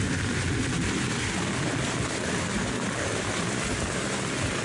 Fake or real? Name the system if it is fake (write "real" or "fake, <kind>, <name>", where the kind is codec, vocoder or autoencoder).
real